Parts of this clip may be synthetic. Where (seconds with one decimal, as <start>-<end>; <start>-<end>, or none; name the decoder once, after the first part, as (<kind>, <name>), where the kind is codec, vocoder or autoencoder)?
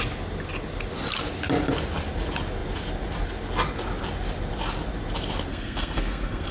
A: 5.5-6.5 (codec, SNAC)